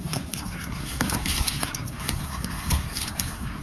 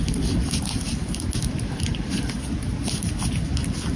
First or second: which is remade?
first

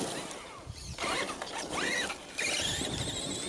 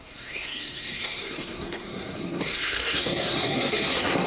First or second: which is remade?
second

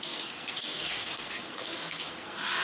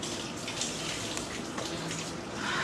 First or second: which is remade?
first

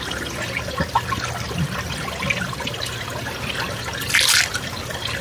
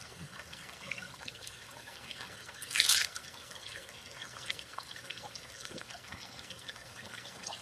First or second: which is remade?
second